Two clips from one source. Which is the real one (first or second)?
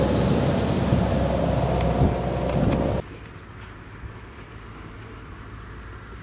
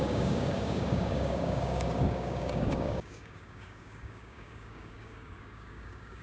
first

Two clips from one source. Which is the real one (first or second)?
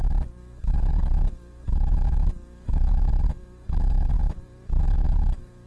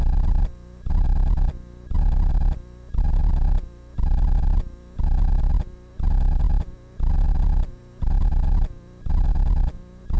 second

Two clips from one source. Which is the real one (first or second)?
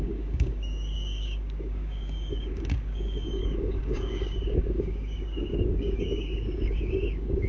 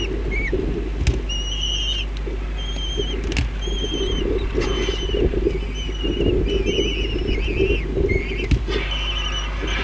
second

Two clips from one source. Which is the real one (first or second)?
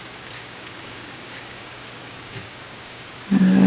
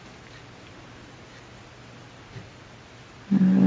second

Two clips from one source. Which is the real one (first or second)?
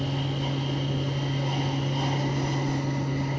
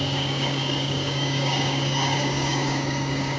first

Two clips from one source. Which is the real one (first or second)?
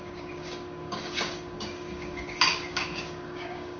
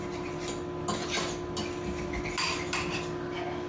second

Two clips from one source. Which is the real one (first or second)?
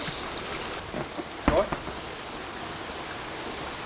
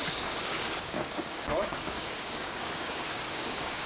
first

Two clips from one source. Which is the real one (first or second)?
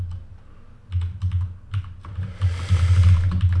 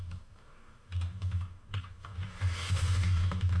first